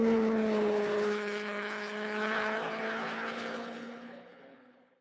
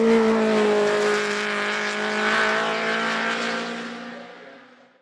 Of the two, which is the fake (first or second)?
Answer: first